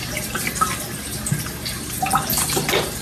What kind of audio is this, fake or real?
real